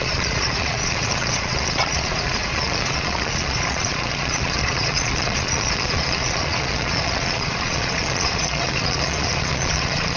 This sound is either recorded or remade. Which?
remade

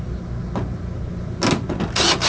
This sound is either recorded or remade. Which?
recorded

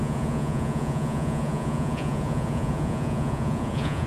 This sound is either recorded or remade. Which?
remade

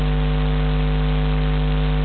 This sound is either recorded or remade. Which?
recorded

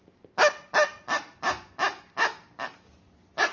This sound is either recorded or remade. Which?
recorded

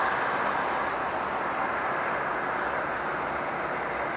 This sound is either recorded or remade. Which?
recorded